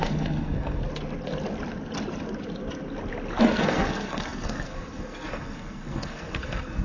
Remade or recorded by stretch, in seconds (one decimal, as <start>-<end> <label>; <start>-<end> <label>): 0.0-0.8 remade; 0.8-3.4 recorded; 3.4-6.8 remade